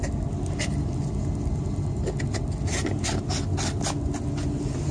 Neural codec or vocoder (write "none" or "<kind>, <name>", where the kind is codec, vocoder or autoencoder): none